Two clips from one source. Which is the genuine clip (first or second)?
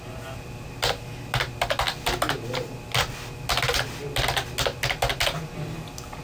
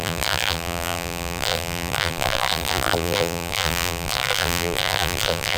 first